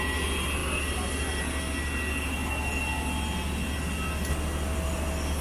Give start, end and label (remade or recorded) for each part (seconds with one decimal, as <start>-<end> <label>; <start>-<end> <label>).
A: 0.0-5.4 recorded